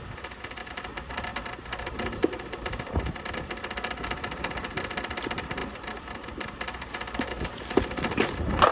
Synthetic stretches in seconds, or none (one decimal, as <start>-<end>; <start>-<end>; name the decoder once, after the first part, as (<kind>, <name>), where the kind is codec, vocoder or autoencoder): 1.3-3.3 (vocoder, BigVGAN v2); 5.6-7.3